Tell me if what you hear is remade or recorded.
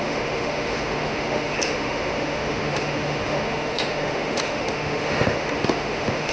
remade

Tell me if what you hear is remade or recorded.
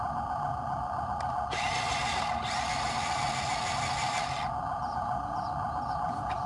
recorded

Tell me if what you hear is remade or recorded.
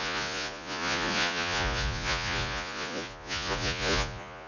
remade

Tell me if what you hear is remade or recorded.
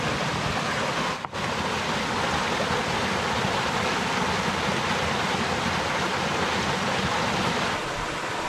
recorded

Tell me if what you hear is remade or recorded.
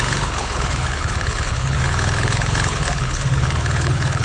remade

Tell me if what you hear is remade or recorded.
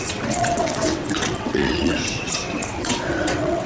remade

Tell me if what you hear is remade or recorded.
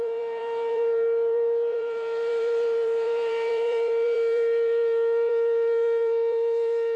remade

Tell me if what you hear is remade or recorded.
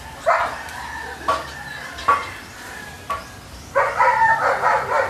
recorded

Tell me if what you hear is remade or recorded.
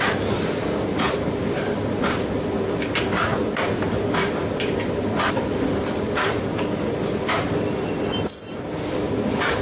recorded